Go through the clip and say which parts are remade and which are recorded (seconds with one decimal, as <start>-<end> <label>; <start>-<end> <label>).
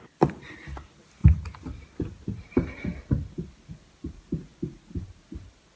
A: 0.0-5.8 recorded